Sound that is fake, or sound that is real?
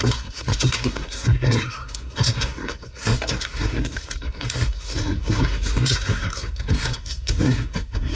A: fake